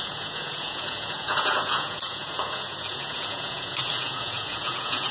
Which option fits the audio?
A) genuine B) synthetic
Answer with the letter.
B